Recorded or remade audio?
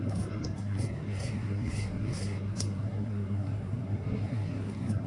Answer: remade